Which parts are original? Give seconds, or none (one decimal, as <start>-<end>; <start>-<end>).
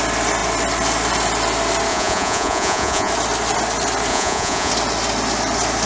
0.0-1.9; 3.1-4.1; 4.7-5.9